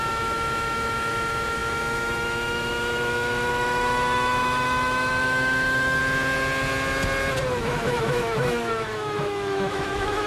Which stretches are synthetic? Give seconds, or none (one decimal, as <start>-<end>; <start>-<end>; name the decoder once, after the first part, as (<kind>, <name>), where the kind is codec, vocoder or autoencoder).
0.0-6.0 (autoencoder, DAC-VAE); 7.6-10.3